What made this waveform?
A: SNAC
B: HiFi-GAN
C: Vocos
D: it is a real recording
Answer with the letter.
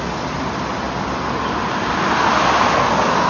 D